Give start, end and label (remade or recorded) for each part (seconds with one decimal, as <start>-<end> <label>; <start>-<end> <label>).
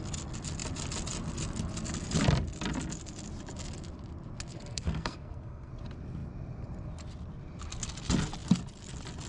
0.0-4.5 recorded; 4.5-5.7 remade; 5.7-9.3 recorded